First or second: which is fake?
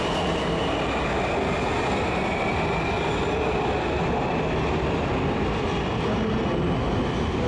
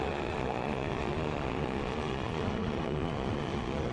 second